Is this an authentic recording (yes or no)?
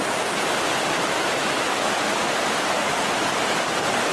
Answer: yes